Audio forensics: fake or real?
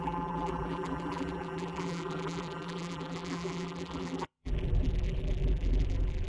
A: fake